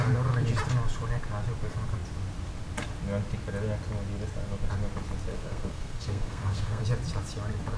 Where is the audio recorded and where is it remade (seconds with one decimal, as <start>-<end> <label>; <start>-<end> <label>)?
0.0-5.3 recorded; 5.3-6.8 remade; 6.8-7.8 recorded